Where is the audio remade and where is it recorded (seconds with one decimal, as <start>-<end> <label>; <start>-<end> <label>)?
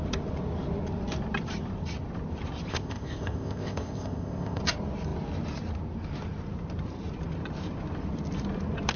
0.0-2.7 recorded; 2.7-4.6 remade; 4.6-9.0 recorded